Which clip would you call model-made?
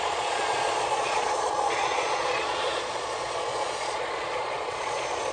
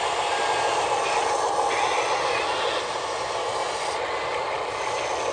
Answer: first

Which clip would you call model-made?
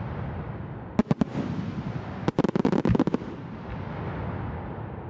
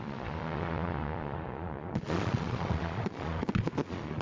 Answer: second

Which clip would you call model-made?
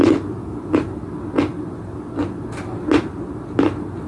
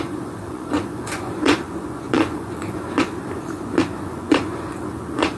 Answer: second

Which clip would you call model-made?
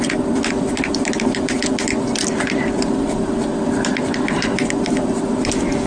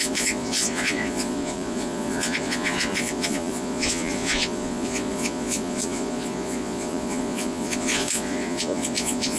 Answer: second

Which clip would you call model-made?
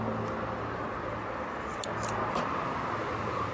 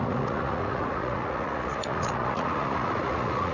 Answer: second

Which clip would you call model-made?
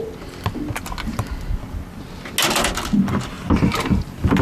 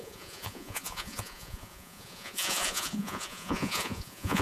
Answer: second